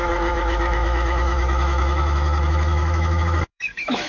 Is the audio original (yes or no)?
no